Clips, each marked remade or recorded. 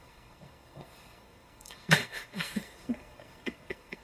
remade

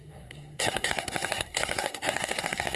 remade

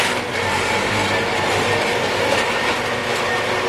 recorded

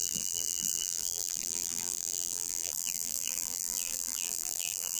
remade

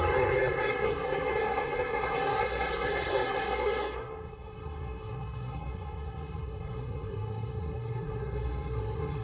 remade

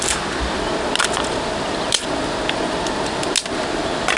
recorded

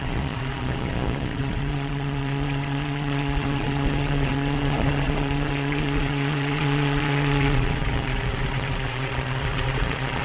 remade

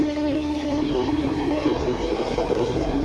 remade